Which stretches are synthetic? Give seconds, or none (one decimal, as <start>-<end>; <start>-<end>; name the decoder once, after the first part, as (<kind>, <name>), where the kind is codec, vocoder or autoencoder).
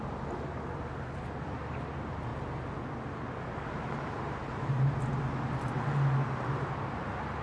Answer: none